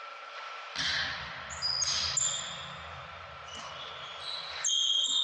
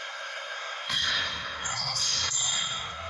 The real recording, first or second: first